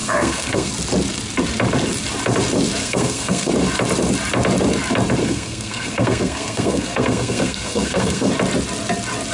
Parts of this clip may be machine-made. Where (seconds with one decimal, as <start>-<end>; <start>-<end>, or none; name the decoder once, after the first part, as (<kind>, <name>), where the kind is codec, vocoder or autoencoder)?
0.0-0.7 (codec, SNAC); 2.8-3.5; 5.2-8.3